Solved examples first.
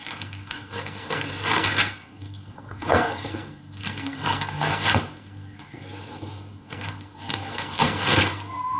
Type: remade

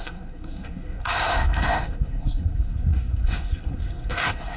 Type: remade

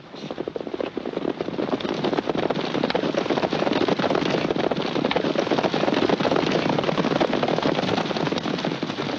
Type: recorded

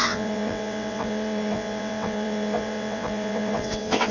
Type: remade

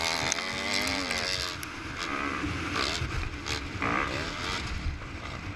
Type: recorded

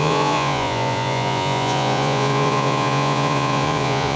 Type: remade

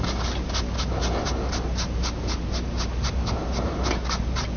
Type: recorded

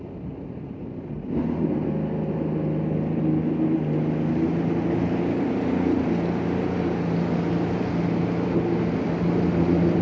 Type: recorded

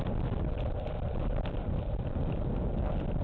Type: recorded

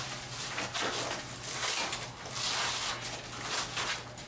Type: recorded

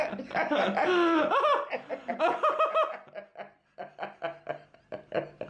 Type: recorded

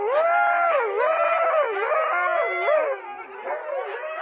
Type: recorded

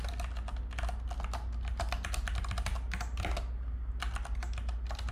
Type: recorded